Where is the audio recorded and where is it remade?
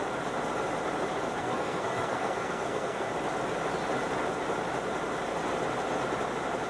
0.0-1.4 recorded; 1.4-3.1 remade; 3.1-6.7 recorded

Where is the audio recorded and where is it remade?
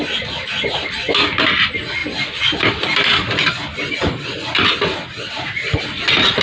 0.0-6.4 recorded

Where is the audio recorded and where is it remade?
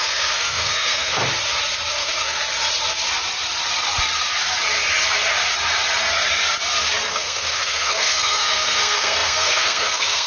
0.0-1.2 remade; 1.2-1.9 recorded; 1.9-2.4 remade; 2.4-7.1 recorded; 7.1-10.3 remade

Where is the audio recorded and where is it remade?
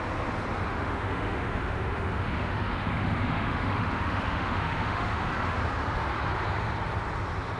0.0-0.7 recorded; 0.7-5.3 remade; 5.3-7.6 recorded